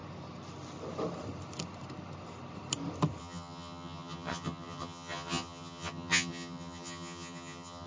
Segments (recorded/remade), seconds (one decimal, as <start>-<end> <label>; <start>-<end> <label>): 0.0-3.2 recorded; 3.2-7.9 remade